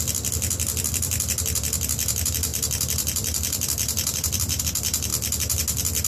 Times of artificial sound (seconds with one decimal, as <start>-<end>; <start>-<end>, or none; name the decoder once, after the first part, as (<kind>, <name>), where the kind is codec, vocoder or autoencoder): 2.5-4.6 (vocoder, BigVGAN v2)